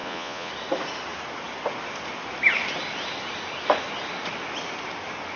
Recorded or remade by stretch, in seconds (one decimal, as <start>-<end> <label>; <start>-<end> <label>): 0.0-0.5 remade; 0.5-5.4 recorded